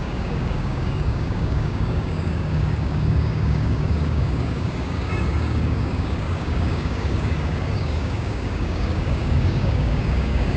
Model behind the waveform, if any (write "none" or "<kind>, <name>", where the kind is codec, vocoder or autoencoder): codec, DAC